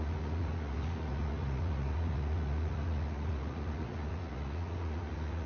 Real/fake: fake